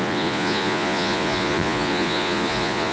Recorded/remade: remade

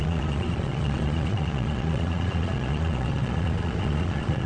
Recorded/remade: remade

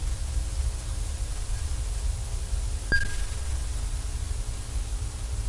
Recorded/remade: recorded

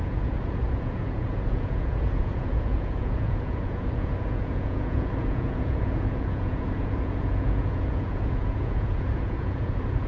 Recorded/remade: remade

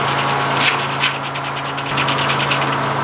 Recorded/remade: recorded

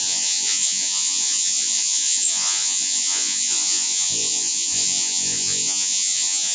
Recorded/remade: remade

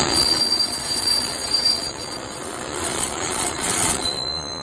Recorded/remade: remade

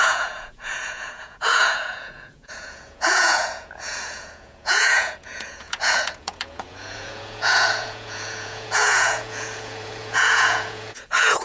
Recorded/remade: remade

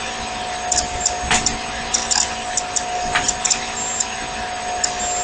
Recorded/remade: recorded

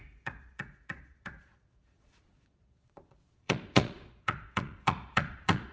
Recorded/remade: remade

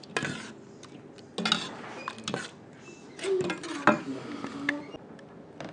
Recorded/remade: recorded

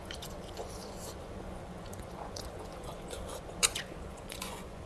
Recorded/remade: remade